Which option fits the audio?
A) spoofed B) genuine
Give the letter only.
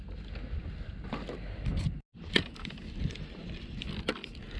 B